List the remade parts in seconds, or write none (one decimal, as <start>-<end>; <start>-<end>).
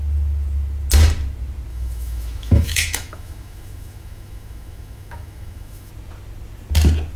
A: 1.7-5.9